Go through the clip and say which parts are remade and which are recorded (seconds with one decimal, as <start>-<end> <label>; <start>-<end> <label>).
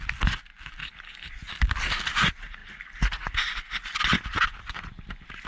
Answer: 0.0-0.8 recorded; 0.8-1.3 remade; 1.3-5.5 recorded